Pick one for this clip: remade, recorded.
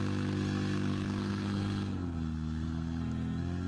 remade